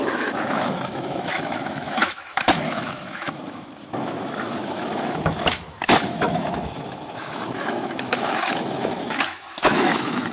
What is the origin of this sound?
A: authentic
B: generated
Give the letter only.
B